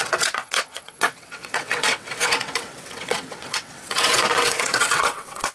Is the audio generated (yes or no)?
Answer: yes